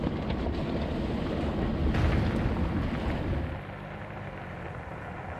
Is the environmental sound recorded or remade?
recorded